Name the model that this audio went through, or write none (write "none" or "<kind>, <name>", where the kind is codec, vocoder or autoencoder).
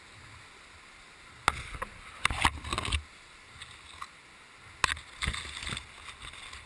none